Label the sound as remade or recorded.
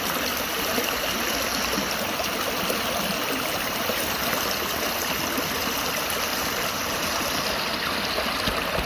recorded